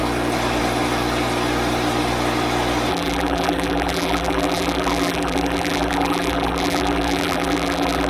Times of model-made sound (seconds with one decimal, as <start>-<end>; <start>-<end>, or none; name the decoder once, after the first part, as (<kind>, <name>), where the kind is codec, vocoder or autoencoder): 2.9-8.1 (vocoder, BigVGAN v2)